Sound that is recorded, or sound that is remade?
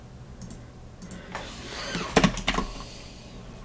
recorded